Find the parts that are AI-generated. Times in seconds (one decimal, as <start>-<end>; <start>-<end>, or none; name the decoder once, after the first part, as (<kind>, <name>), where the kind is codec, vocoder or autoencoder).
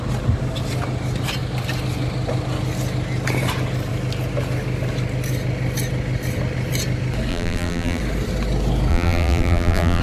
7.3-8.0 (vocoder, BigVGAN v2); 8.9-10.0